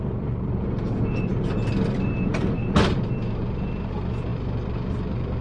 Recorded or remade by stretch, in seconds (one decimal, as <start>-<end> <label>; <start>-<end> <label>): 0.0-2.6 remade; 2.6-3.4 recorded; 3.4-5.4 remade